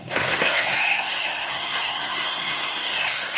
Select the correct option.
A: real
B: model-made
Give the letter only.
B